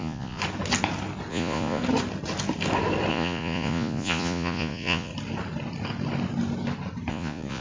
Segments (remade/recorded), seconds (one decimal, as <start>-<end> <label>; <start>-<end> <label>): 0.0-0.4 remade; 0.4-1.3 recorded; 1.3-1.8 remade; 1.8-3.1 recorded; 3.1-5.1 remade; 5.1-7.1 recorded; 7.1-7.6 remade

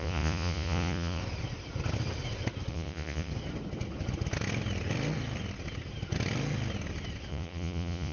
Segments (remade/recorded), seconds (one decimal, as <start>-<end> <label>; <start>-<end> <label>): 0.0-1.2 remade; 1.2-2.7 recorded; 2.7-3.3 remade; 3.3-7.3 recorded; 7.3-8.1 remade

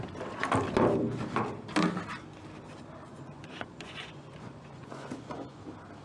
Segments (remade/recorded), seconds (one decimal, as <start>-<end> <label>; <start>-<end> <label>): 0.0-3.1 recorded; 3.1-5.6 remade; 5.6-6.0 recorded

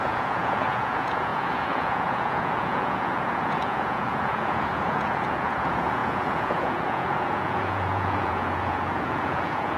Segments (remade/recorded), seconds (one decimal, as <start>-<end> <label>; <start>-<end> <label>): 0.0-9.8 remade